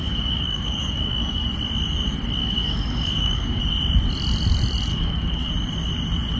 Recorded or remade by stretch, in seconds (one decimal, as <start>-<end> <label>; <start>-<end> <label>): 0.0-1.5 remade; 1.5-2.4 recorded; 2.4-3.6 remade; 3.6-4.9 recorded; 4.9-5.5 remade; 5.5-6.4 recorded